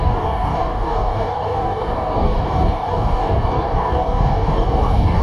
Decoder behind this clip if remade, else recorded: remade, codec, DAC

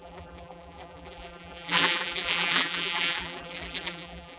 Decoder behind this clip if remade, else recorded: remade, vocoder, BigVGAN v2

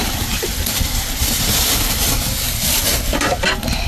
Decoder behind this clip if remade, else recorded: remade, vocoder, BigVGAN v2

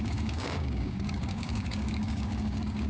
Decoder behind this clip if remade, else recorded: remade, codec, DAC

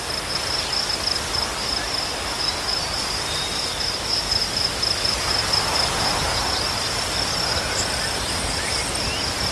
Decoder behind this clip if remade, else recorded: recorded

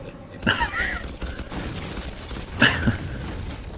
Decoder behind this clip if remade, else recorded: recorded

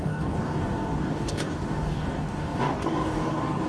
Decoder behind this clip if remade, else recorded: remade, codec, DAC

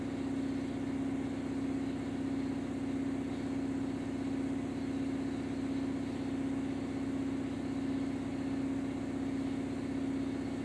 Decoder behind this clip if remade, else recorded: recorded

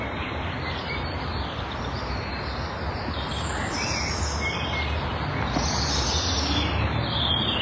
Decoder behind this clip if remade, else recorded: recorded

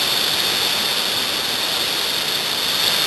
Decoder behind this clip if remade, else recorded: recorded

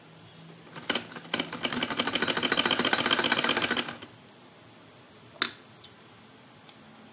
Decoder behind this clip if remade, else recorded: recorded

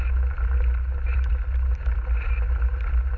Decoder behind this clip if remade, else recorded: recorded